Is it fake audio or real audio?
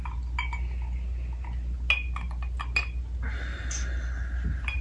real